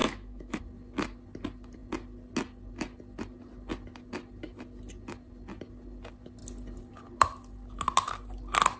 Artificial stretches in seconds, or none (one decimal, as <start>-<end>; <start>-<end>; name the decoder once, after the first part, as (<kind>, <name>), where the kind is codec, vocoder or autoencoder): 0.0-0.6 (autoencoder, DAC-VAE)